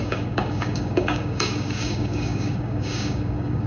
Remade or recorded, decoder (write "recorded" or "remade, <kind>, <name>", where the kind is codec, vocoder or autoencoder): remade, codec, DAC